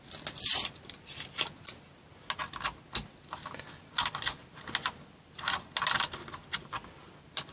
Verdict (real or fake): real